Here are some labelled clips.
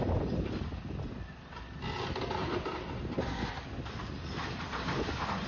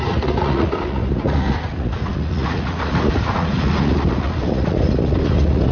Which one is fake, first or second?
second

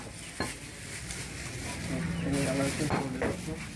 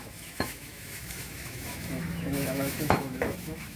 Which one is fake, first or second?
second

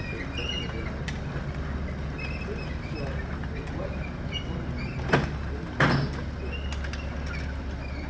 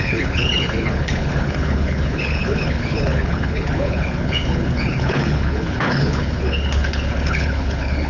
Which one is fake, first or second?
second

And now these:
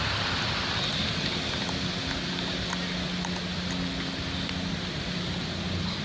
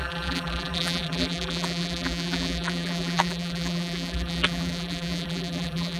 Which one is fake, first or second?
second